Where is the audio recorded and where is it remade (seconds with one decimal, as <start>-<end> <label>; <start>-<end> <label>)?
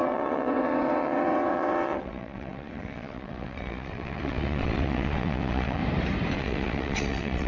0.0-5.8 remade; 5.8-6.3 recorded; 6.3-7.5 remade